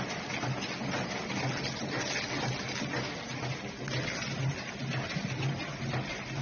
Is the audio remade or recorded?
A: recorded